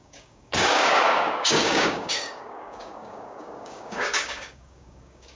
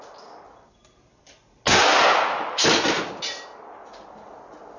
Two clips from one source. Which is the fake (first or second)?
first